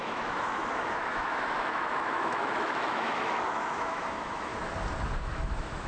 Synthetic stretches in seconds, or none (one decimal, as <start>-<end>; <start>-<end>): 0.0-4.5; 5.2-5.9